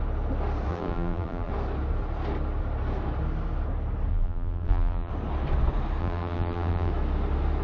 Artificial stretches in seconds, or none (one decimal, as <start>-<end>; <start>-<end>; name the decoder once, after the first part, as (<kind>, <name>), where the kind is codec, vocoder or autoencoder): 0.7-1.5 (vocoder, BigVGAN v2); 4.1-5.1; 6.0-6.9